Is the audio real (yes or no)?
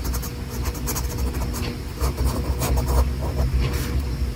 yes